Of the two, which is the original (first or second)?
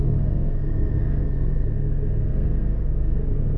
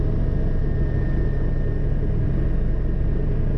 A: second